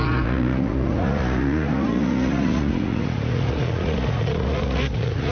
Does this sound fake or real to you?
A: fake